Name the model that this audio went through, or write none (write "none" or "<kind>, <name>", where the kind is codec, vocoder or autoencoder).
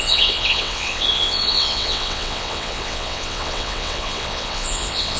vocoder, WaveNeXt